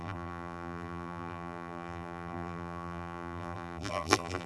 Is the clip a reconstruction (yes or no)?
yes